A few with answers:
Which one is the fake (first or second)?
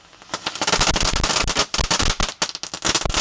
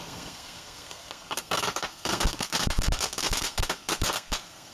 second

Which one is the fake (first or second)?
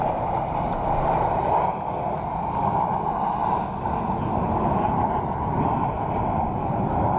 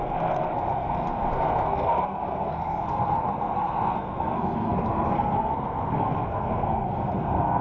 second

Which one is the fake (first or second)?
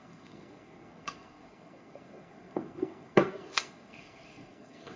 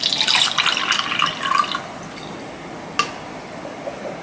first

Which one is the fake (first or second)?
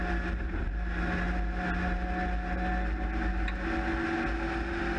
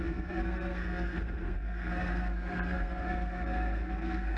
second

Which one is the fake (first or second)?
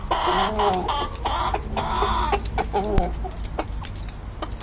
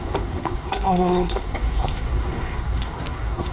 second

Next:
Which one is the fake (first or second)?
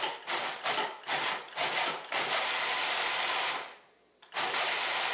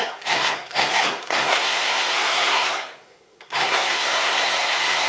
second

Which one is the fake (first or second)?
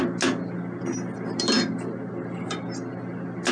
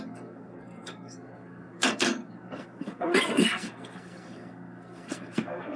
second